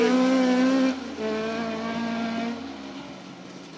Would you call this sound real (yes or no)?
yes